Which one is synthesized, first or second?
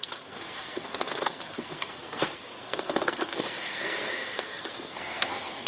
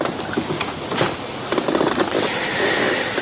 first